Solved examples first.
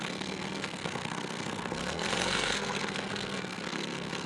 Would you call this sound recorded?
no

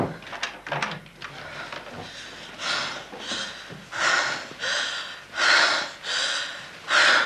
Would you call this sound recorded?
yes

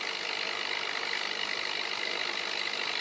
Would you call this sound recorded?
yes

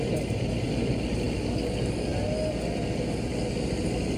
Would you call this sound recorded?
yes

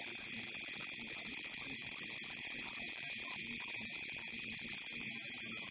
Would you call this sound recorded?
no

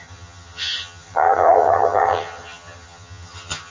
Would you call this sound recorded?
no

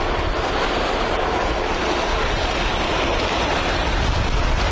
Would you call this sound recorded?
yes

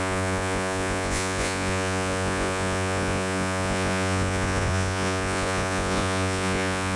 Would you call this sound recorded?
no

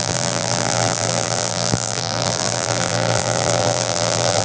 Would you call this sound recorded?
no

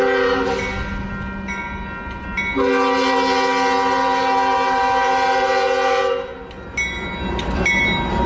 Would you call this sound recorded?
yes